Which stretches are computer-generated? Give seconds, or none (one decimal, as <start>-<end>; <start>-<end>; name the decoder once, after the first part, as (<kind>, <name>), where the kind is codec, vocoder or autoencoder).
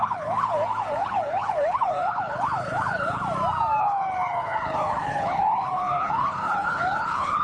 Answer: 0.0-3.2 (codec, HILCodec); 3.8-7.4